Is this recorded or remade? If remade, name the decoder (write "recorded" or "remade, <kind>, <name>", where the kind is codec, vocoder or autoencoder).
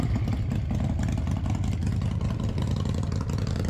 recorded